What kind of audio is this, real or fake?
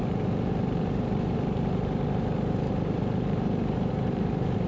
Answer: fake